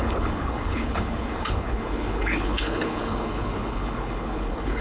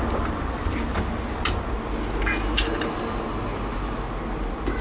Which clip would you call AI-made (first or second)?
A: first